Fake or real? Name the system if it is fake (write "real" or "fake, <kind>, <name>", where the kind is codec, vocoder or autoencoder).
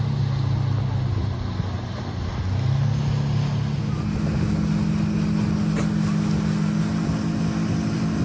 real